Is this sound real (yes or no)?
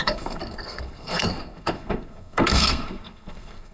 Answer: no